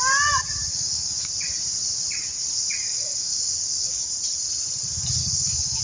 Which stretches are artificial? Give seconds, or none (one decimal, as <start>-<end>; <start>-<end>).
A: 0.7-1.3; 2.9-4.1; 5.2-5.8